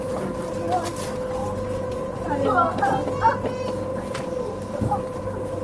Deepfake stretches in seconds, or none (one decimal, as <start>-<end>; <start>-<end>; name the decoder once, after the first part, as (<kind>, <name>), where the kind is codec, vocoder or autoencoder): 1.4-2.3 (vocoder, BigVGAN v2); 3.9-5.6